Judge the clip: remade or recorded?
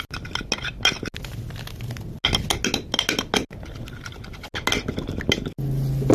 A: recorded